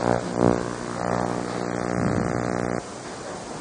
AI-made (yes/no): no